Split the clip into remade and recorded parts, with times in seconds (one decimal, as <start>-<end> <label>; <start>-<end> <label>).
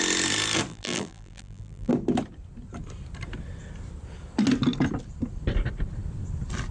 0.0-0.7 recorded; 0.7-1.9 remade; 1.9-6.7 recorded